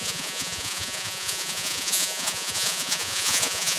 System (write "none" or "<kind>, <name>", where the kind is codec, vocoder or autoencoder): vocoder, Vocos